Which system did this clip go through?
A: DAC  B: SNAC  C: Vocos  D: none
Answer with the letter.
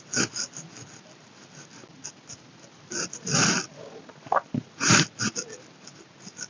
D